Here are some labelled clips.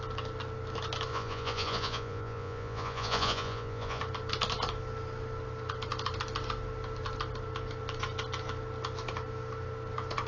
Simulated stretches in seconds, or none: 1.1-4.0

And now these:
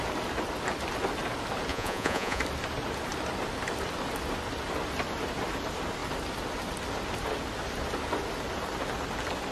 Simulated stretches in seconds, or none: 1.7-2.4

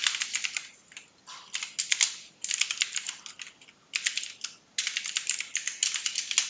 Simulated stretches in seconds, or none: none